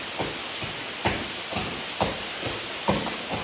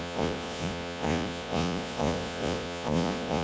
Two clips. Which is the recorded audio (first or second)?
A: first